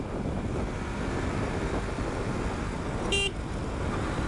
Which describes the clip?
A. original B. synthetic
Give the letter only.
A